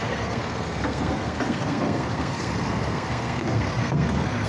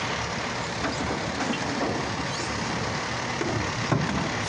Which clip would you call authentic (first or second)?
second